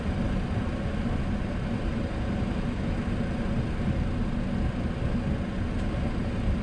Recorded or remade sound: recorded